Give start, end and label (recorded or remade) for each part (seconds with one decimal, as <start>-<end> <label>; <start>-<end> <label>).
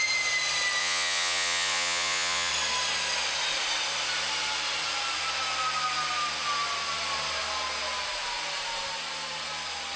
0.0-0.8 recorded; 0.8-2.5 remade; 2.5-10.0 recorded